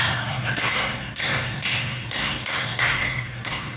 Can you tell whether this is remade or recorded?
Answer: remade